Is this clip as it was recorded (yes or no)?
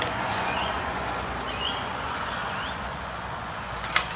no